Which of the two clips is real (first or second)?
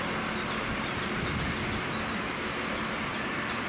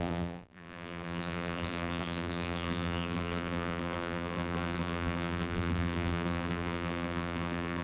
first